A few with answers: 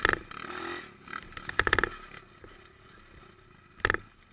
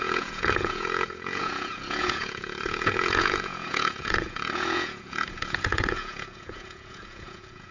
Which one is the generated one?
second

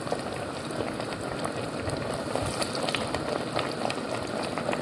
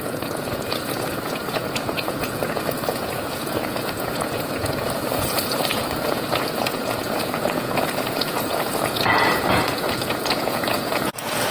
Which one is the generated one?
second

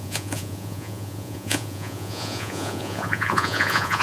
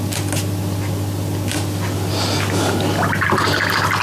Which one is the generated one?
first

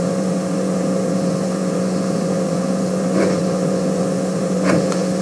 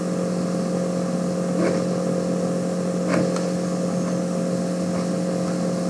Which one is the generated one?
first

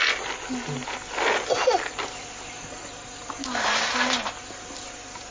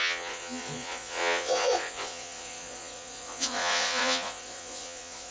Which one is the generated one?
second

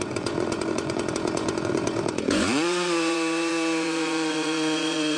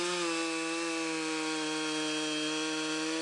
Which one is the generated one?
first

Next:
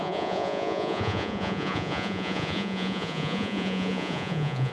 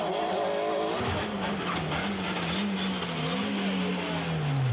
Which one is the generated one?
first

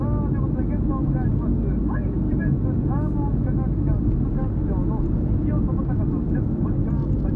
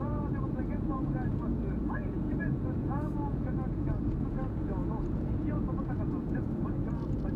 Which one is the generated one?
second